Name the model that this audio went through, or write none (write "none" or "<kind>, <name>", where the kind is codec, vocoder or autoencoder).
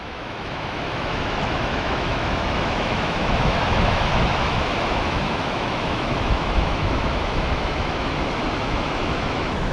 autoencoder, DAC-VAE